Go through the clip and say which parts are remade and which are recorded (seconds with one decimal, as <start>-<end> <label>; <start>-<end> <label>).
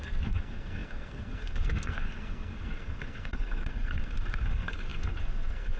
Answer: 0.0-5.8 remade